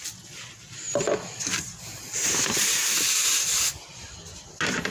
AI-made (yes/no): no